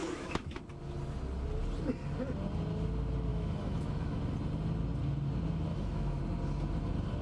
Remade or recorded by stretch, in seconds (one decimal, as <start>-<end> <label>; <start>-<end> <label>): 0.0-0.6 remade; 0.6-3.3 recorded; 3.3-4.2 remade; 4.2-5.7 recorded; 5.7-6.2 remade; 6.2-7.2 recorded